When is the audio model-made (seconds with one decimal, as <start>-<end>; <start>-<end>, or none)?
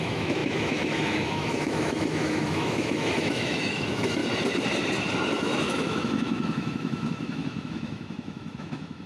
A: 0.0-4.2; 5.4-9.1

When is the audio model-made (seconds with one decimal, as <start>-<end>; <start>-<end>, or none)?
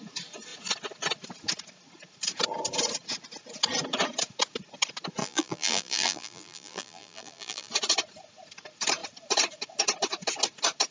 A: 5.2-7.7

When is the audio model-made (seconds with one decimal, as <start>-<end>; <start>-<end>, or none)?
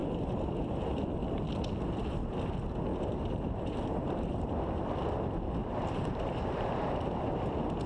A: 2.9-4.9; 5.6-7.2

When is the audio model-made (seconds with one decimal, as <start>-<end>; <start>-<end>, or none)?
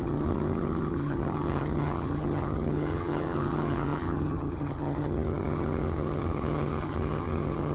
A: 0.0-7.7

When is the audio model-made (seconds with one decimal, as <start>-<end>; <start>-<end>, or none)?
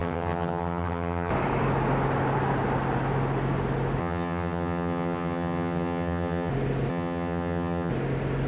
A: 0.0-1.3; 4.0-6.5; 6.9-7.9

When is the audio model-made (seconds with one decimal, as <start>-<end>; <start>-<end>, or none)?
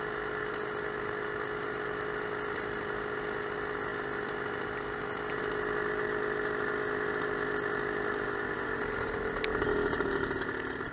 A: none